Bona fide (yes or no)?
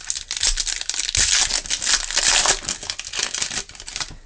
yes